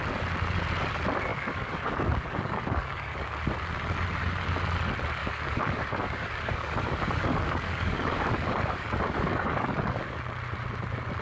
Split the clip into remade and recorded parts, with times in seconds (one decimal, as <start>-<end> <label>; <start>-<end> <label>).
0.0-1.3 recorded; 1.3-3.3 remade; 3.3-5.2 recorded; 5.2-10.2 remade; 10.2-11.2 recorded